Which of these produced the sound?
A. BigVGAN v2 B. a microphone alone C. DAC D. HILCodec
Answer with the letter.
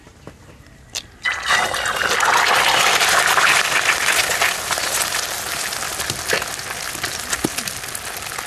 B